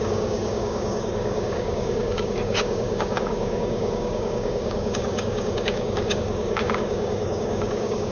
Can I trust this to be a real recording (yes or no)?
no